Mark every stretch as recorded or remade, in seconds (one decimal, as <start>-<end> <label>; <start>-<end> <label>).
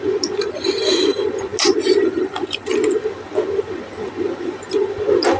0.0-5.4 recorded